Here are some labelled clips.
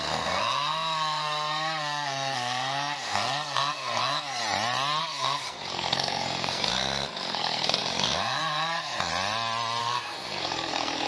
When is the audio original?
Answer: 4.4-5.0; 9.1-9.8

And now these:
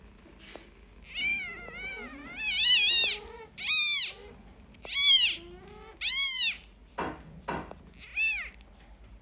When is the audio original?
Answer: 0.0-9.2

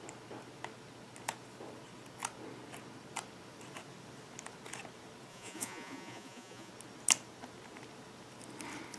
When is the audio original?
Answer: 0.0-5.3; 6.7-9.0